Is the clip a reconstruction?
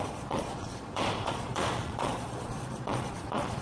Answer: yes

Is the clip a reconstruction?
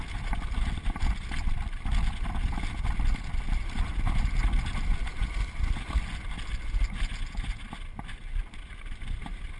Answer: no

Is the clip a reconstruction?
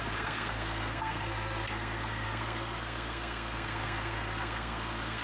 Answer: yes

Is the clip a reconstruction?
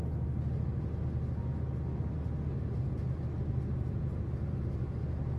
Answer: no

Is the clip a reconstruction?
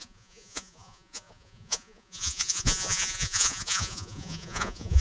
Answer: yes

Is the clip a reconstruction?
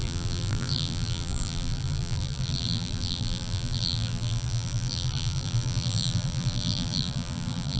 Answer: yes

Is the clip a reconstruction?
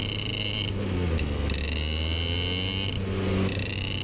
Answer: no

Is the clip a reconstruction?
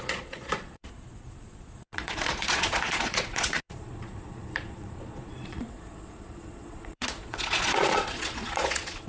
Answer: yes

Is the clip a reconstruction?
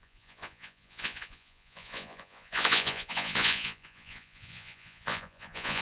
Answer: yes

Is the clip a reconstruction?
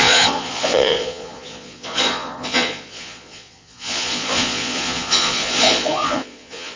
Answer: yes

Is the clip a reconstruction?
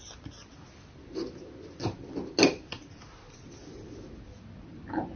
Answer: no